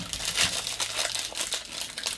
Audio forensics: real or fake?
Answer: real